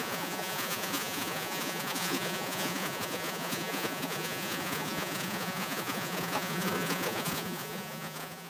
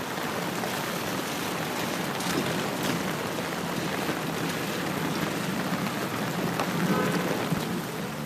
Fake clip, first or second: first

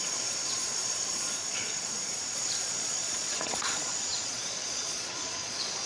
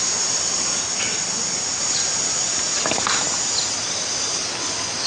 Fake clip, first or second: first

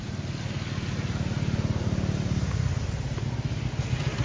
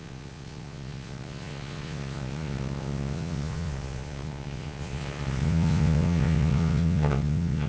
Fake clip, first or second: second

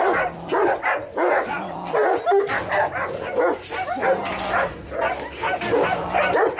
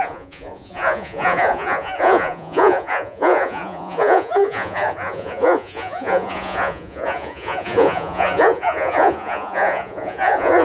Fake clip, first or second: second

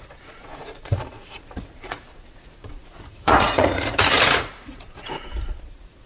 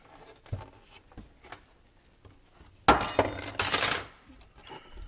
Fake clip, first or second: first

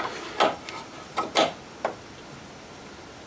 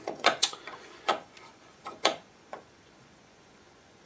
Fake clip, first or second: second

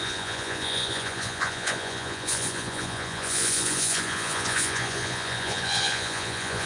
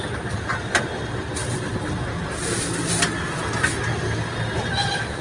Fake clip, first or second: first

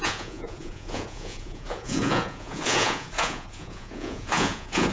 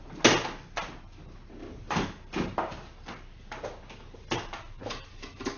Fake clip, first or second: first